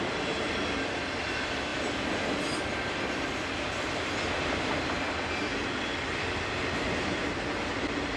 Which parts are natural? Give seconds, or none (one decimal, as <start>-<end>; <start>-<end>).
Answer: 0.0-8.2